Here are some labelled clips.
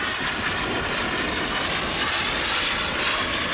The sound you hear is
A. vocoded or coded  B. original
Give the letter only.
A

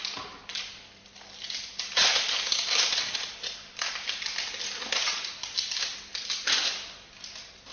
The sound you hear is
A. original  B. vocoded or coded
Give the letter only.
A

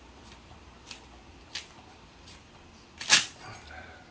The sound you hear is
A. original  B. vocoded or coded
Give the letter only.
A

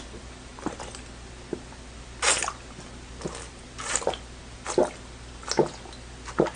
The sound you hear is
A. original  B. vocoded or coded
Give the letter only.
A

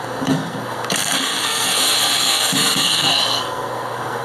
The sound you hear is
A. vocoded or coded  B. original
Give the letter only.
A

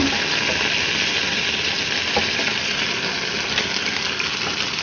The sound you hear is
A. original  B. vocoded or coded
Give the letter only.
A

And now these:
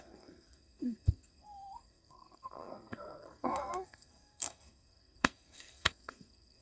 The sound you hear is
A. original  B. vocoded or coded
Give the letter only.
B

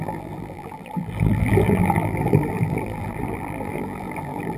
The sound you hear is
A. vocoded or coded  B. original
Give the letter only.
A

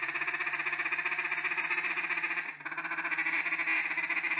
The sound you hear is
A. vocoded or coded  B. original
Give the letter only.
B